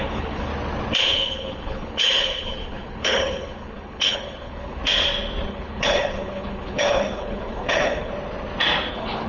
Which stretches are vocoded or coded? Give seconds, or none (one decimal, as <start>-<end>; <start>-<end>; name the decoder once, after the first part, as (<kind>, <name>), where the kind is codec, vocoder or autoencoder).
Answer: 0.0-0.5 (codec, HILCodec); 1.0-4.8; 5.5-8.1; 8.9-9.3